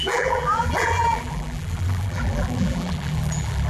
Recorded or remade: remade